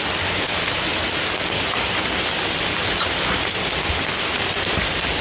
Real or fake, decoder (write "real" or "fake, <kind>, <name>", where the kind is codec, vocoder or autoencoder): real